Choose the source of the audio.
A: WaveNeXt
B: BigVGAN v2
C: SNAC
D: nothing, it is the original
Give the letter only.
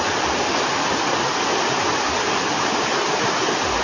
D